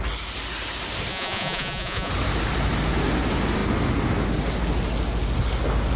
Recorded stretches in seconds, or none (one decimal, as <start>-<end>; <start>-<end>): 0.0-1.1; 2.1-6.0